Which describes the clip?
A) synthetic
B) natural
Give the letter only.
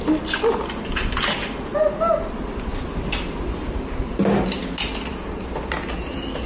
B